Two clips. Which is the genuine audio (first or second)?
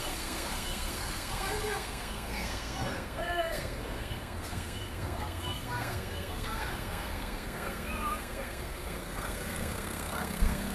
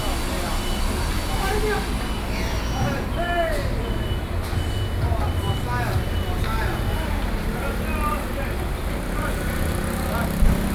second